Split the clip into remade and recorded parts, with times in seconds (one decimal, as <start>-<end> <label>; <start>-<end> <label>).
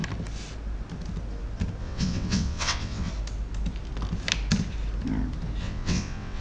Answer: 0.0-1.8 recorded; 1.8-3.1 remade; 3.1-5.6 recorded; 5.6-6.4 remade